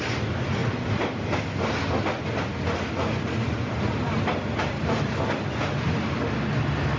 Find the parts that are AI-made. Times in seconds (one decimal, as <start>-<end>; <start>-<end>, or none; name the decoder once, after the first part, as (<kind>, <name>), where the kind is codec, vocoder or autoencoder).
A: 0.6-1.4 (vocoder, BigVGAN v2)